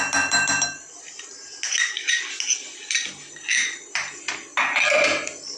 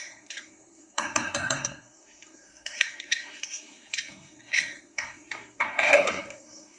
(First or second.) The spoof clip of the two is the second